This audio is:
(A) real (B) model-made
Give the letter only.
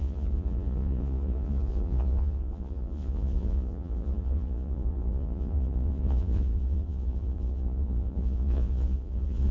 B